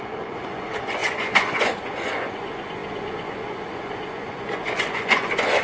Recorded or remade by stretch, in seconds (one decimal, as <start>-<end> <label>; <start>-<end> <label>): 0.0-5.6 remade